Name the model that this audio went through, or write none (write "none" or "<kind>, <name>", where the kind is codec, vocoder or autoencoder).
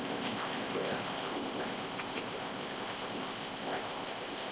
codec, ZipCodec